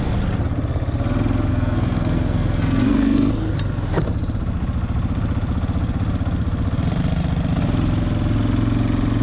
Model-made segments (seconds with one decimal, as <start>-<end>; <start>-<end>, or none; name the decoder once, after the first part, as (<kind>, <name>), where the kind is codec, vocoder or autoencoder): 1.5-3.3 (codec, SNAC)